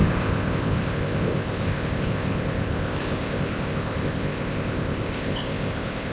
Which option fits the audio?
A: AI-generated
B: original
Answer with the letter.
A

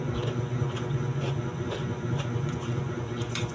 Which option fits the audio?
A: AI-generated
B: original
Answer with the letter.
A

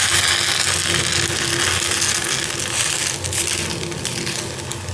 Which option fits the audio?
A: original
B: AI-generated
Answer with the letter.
A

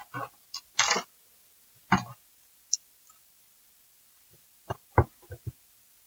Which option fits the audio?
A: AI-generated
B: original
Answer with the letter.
B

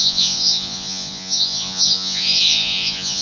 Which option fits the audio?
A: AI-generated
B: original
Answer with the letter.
A